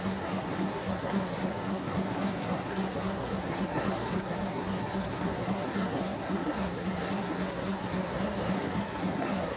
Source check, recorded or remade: remade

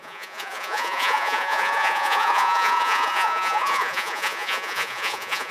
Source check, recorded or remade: remade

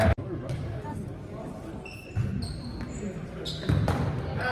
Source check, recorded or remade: recorded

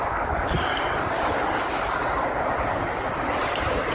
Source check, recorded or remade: recorded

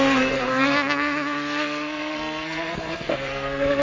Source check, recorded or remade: remade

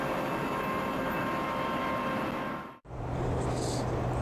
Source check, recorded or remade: recorded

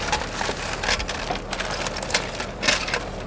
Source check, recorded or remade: recorded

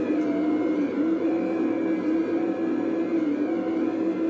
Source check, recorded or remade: recorded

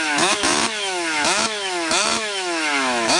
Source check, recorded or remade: remade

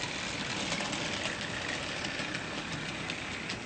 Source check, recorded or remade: recorded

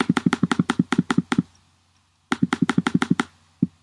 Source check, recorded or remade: recorded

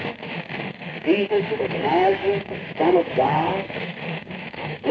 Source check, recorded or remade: remade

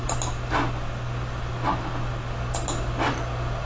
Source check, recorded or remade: recorded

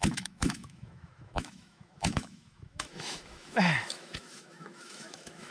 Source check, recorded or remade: remade